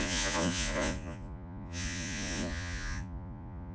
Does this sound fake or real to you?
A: fake